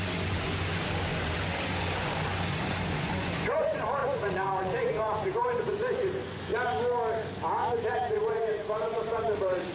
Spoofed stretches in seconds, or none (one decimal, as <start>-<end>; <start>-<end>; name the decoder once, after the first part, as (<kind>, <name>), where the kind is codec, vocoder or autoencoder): 0.0-6.5 (vocoder, Vocos); 7.9-9.7

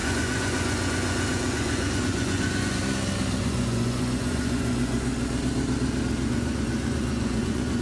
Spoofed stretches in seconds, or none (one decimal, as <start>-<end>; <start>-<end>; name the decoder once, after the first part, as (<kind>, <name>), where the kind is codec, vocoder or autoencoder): 0.0-2.8 (vocoder, Vocos); 3.4-5.1; 6.3-7.8